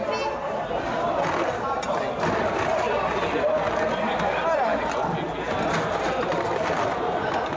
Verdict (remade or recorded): recorded